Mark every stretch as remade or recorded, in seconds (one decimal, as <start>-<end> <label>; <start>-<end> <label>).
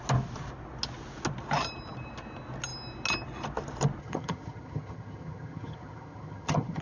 0.0-4.0 recorded; 4.0-6.8 remade